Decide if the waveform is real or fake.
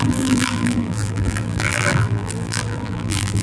fake